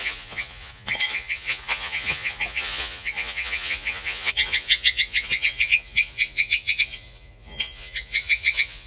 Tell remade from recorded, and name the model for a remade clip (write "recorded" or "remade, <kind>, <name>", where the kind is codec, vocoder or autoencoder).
remade, vocoder, Vocos